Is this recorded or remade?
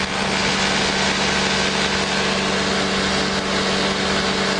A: recorded